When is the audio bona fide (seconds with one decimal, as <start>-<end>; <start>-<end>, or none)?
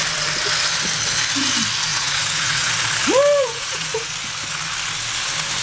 0.0-1.9; 2.7-3.4; 4.1-5.6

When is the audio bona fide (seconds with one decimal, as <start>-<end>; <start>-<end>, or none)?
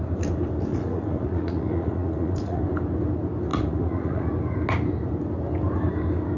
0.0-0.7; 2.6-3.5; 4.3-6.4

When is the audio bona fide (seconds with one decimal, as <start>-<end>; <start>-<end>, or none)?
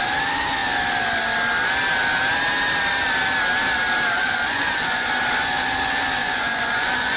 0.0-4.2; 5.1-6.2